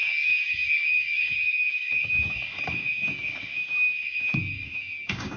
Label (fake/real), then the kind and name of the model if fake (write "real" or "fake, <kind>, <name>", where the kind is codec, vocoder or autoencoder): fake, codec, DAC